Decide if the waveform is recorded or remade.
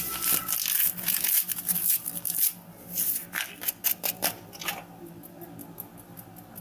recorded